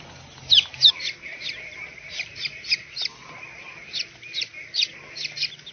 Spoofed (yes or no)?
no